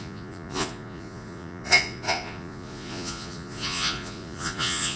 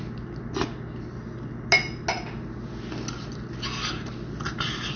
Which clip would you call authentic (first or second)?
second